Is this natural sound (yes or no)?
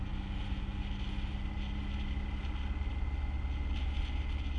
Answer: yes